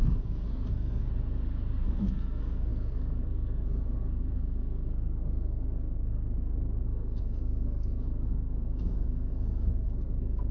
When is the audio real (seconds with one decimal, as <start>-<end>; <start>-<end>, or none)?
1.1-1.8